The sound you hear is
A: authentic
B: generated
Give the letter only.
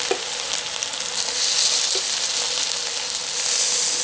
A